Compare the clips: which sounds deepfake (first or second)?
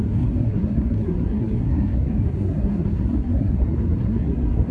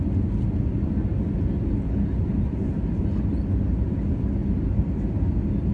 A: first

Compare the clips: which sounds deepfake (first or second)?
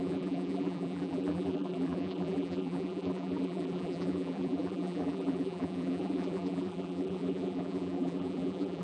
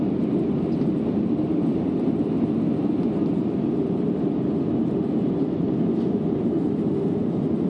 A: first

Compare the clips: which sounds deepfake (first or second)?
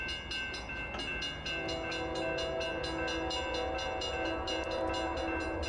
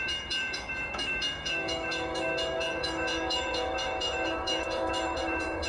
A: second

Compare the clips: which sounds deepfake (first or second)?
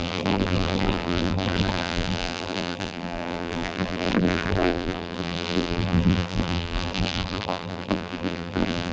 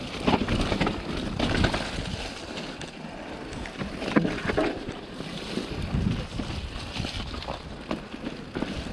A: first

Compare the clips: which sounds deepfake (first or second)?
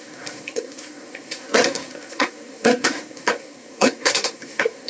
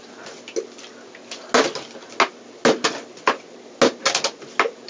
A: first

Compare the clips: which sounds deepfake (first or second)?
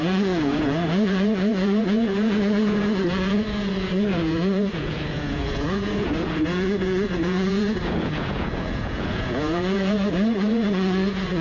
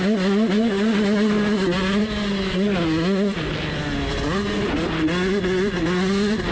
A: first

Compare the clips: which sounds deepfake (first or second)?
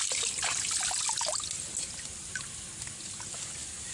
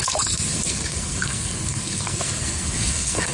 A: second